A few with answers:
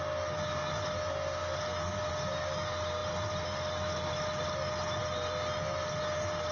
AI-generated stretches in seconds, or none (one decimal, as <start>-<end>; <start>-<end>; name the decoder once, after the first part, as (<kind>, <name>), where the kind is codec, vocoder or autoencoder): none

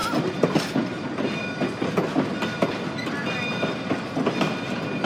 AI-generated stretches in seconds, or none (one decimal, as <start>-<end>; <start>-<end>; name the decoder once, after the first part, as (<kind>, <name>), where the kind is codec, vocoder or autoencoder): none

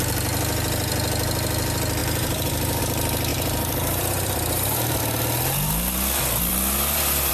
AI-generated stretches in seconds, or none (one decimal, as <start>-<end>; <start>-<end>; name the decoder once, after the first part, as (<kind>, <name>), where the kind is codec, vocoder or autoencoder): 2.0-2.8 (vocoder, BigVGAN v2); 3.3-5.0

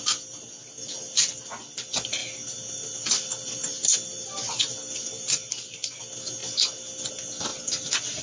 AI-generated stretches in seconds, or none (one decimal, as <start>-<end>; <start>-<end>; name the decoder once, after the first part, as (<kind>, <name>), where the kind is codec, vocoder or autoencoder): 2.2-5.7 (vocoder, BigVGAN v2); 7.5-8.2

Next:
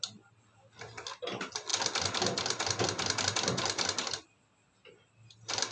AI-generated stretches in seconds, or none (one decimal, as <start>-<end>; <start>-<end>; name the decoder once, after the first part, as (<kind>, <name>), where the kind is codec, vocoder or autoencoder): none